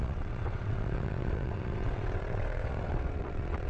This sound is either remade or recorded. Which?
remade